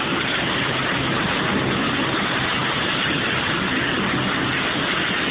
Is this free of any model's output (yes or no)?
yes